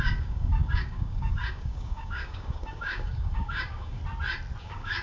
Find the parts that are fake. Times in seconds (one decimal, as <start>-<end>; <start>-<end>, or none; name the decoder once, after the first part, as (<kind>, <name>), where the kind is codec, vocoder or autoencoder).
0.0-4.0 (codec, DAC); 4.6-5.0